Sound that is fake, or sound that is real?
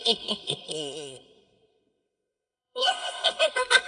fake